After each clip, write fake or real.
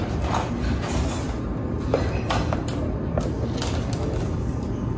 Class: real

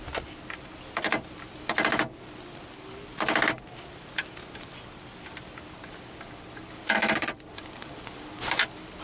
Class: real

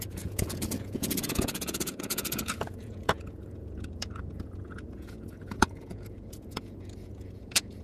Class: fake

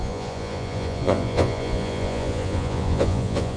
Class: fake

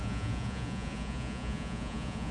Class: fake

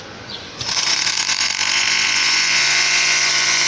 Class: fake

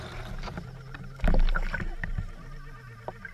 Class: real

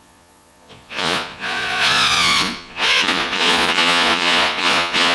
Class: fake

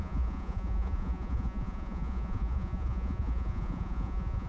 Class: fake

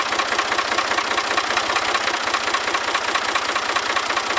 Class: real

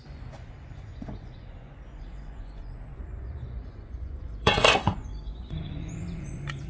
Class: fake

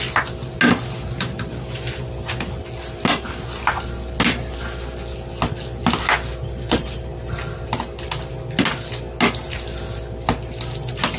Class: real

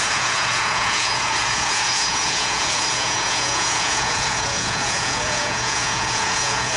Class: fake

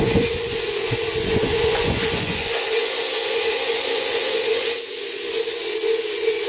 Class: fake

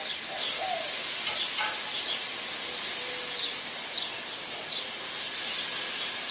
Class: real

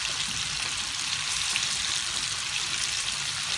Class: real